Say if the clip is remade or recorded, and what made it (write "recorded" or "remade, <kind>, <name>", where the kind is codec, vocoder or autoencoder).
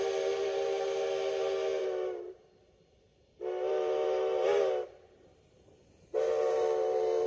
remade, vocoder, BigVGAN v2